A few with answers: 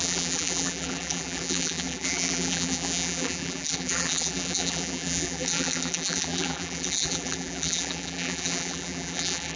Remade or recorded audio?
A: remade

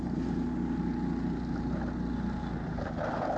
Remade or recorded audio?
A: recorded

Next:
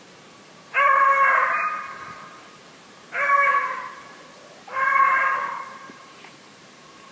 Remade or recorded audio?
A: remade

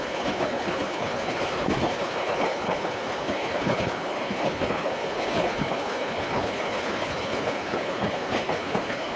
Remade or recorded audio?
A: remade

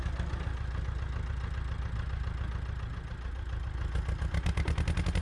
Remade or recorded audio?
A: recorded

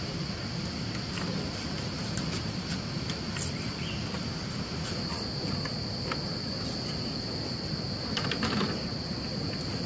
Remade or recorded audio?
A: remade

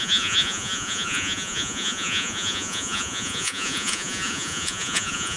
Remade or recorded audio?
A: remade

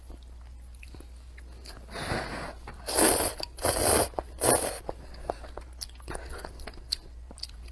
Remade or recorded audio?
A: recorded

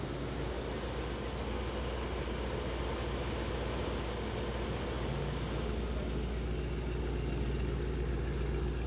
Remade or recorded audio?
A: recorded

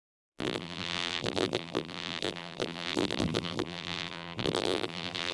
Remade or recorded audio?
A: remade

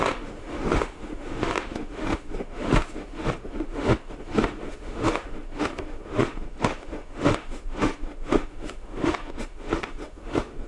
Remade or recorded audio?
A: remade